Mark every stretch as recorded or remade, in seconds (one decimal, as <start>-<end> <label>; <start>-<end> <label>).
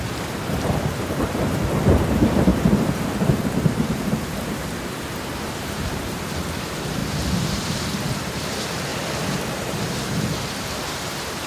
0.0-8.9 remade; 8.9-9.5 recorded; 9.5-11.5 remade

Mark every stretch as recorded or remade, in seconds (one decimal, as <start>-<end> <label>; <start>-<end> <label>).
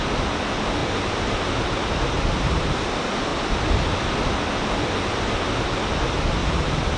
0.0-0.8 recorded; 0.8-2.9 remade; 2.9-6.4 recorded; 6.4-7.0 remade